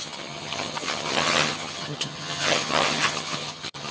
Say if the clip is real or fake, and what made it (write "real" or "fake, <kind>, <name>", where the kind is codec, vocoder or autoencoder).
fake, vocoder, HiFi-GAN